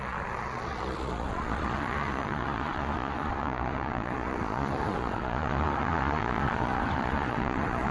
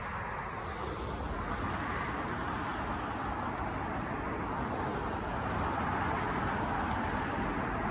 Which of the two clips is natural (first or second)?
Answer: second